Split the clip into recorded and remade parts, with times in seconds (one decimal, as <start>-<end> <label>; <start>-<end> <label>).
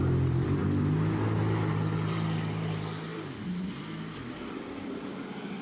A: 0.0-3.1 recorded; 3.1-3.7 remade; 3.7-5.6 recorded